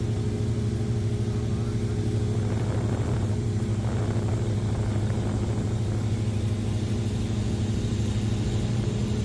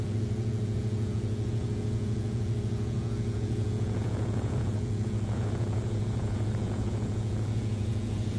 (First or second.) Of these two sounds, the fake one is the second